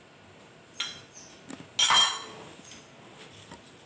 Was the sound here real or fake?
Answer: real